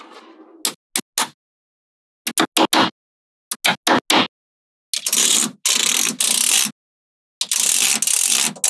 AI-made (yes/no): no